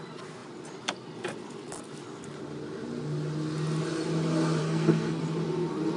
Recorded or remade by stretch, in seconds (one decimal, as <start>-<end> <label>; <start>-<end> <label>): 0.0-4.6 recorded; 4.6-5.2 remade; 5.2-6.0 recorded